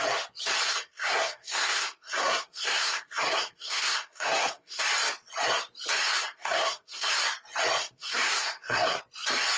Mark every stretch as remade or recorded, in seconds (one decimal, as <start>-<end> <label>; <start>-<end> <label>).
0.0-0.7 recorded; 0.7-4.8 remade; 4.8-6.1 recorded; 6.1-7.1 remade; 7.1-7.8 recorded; 7.8-9.0 remade; 9.0-9.6 recorded